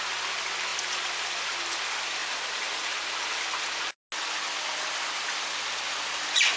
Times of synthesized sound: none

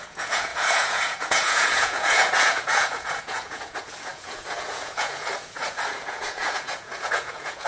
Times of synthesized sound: 0.0-7.7 (vocoder, Vocos)